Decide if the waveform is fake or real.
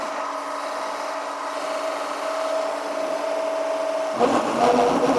real